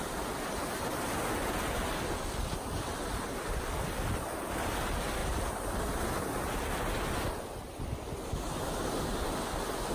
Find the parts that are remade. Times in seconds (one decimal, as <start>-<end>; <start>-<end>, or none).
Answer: none